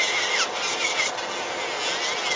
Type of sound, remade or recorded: recorded